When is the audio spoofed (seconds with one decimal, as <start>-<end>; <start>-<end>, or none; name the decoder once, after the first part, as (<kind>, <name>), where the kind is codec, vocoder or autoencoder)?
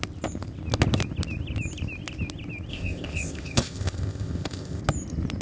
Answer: 2.7-4.8 (codec, ZipCodec)